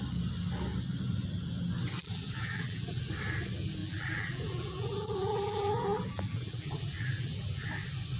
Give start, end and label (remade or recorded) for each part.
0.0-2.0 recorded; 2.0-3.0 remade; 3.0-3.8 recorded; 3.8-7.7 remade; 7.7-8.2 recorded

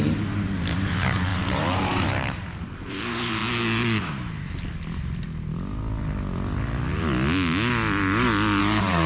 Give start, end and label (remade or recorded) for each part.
0.0-3.4 remade; 3.4-8.6 recorded; 8.6-9.1 remade

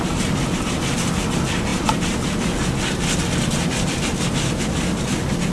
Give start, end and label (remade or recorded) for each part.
0.0-5.5 recorded